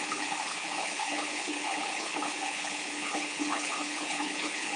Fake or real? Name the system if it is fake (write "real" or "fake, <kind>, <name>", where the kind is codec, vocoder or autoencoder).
fake, codec, HILCodec